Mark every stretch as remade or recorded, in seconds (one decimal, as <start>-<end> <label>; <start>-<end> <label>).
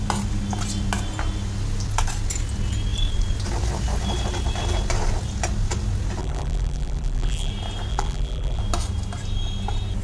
0.0-6.2 recorded; 6.2-7.5 remade; 7.5-7.9 recorded; 7.9-8.6 remade; 8.6-10.0 recorded